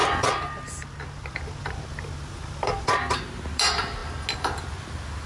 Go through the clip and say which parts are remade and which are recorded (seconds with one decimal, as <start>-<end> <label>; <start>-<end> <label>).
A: 0.0-5.3 recorded